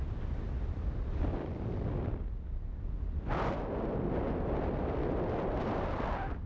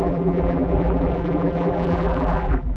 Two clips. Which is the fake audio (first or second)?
second